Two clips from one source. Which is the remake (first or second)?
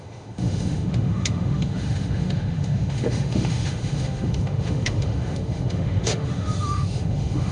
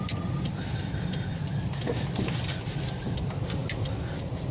first